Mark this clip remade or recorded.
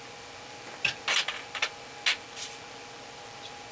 recorded